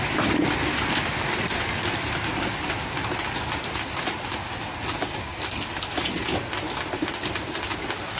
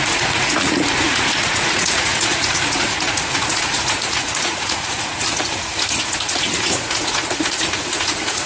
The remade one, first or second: second